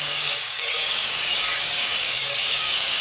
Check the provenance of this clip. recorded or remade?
remade